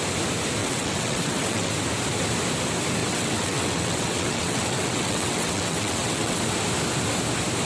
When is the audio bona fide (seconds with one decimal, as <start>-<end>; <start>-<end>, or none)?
0.0-0.6; 1.7-3.0; 6.4-7.7